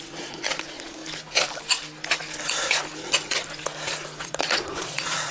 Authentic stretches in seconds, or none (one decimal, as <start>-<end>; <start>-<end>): 1.0-4.2